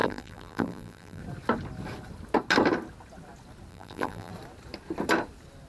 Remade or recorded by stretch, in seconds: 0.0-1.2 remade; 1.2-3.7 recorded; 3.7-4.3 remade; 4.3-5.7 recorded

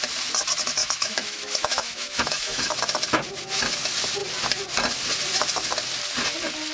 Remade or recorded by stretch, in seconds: 0.0-0.8 recorded; 0.8-2.8 remade; 2.8-6.7 recorded

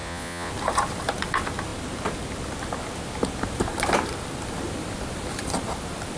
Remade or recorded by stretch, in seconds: 0.0-0.5 remade; 0.5-6.2 recorded

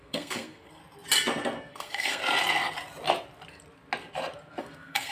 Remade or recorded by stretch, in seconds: 0.0-0.8 remade; 0.8-1.7 recorded; 1.7-2.2 remade; 2.2-4.6 recorded; 4.6-5.1 remade

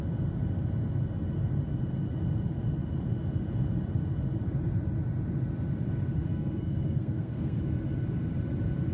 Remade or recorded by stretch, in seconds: 0.0-6.3 recorded; 6.3-7.6 remade; 7.6-8.9 recorded